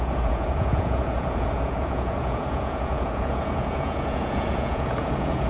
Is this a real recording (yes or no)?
no